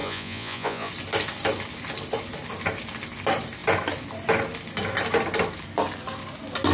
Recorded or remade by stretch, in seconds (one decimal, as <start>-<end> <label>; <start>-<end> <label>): 0.0-0.9 remade; 0.9-6.7 recorded